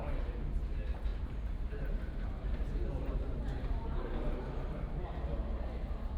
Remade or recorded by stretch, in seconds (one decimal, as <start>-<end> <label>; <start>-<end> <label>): 0.0-1.1 recorded; 1.1-4.1 remade; 4.1-6.2 recorded